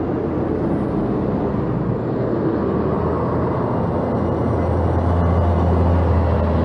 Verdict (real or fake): real